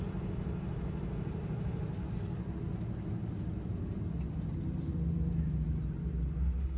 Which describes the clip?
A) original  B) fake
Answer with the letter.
A